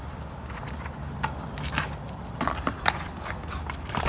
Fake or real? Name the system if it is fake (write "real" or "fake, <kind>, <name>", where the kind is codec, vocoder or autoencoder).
real